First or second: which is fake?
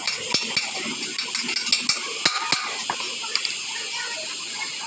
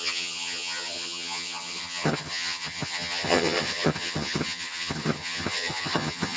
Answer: second